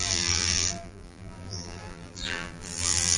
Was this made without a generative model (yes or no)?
no